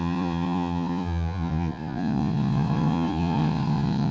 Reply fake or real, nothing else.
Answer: fake